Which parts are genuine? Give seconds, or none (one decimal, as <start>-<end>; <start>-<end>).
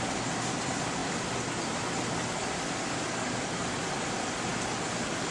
0.0-5.3